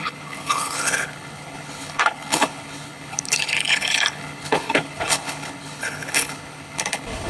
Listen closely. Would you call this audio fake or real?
fake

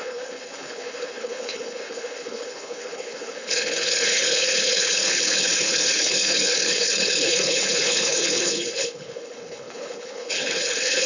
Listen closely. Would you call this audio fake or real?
fake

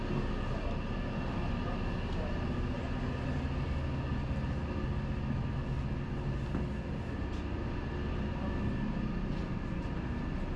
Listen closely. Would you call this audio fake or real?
real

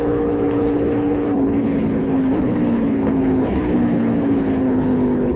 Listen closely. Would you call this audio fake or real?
fake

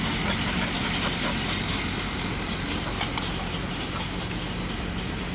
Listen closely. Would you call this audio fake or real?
real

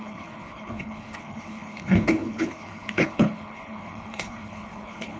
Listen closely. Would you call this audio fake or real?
fake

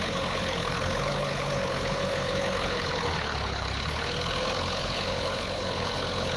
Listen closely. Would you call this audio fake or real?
fake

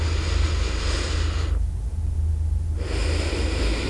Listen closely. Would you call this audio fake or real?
real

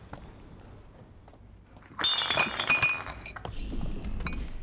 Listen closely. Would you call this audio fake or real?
real